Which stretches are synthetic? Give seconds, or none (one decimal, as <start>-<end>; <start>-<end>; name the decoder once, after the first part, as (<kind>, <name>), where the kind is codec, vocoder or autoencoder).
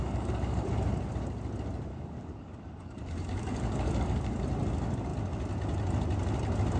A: 0.0-0.7 (codec, DAC); 1.9-4.4